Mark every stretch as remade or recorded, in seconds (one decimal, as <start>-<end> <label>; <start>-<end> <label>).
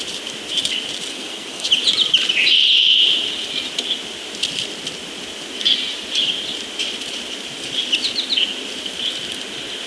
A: 0.0-1.1 recorded; 1.1-1.7 remade; 1.7-9.9 recorded